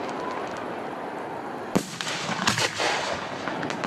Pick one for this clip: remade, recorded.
recorded